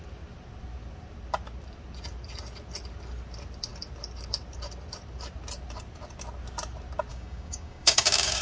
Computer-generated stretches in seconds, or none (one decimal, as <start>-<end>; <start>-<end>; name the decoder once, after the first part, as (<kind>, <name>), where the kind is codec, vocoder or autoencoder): 7.1-8.4 (codec, DAC)